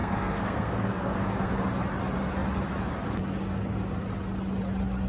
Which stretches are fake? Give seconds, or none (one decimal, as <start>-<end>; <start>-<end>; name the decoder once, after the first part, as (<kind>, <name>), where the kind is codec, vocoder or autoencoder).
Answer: 0.0-1.6 (codec, SNAC)